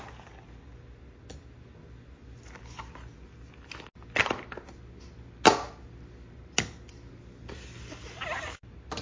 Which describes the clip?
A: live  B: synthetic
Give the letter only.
A